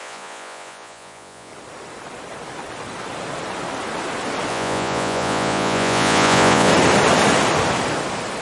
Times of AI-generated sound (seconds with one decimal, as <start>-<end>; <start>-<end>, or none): 0.0-1.5; 4.5-6.7

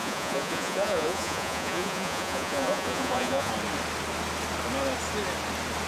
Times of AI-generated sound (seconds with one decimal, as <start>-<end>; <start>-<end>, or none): 0.0-3.5

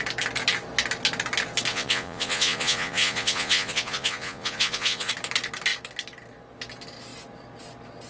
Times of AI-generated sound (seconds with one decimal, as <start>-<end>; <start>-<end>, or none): 1.7-5.1

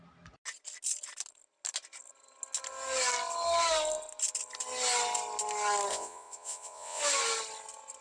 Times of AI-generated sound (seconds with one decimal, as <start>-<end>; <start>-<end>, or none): 5.9-7.0

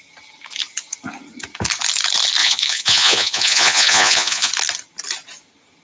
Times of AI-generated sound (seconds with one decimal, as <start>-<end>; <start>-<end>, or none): 2.4-4.5

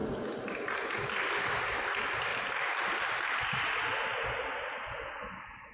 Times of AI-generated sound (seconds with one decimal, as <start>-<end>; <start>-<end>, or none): none

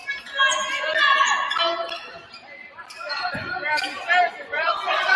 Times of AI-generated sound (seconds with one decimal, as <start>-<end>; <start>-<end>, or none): 3.1-3.6; 4.4-5.2

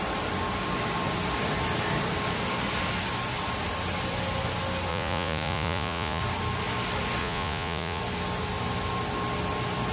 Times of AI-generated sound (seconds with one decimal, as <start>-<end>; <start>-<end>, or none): 4.9-6.2; 7.2-8.0